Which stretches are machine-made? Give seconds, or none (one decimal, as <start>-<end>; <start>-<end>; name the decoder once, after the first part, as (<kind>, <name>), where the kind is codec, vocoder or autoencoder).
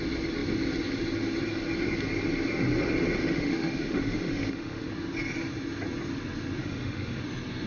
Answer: 3.2-4.9 (autoencoder, DAC-VAE); 6.6-7.2